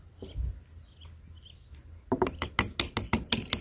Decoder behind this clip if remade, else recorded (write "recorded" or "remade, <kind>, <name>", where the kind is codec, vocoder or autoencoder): recorded